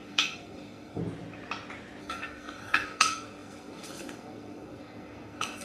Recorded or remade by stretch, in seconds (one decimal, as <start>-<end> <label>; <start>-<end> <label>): 0.0-1.0 remade; 1.0-2.0 recorded; 2.0-5.6 remade